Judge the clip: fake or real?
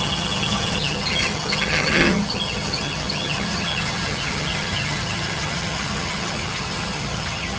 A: fake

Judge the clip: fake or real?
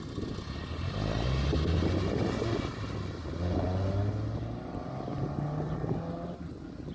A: real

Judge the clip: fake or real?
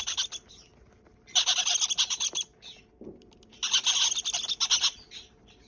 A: real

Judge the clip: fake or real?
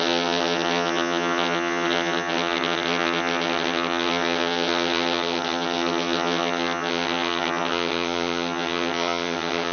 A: fake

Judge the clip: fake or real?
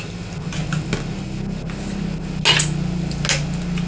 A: real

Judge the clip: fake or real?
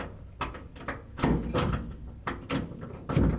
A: real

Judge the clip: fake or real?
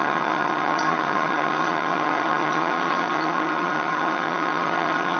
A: fake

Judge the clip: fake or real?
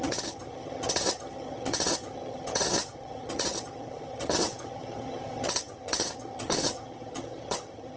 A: fake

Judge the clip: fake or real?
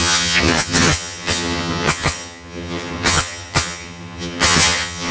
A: fake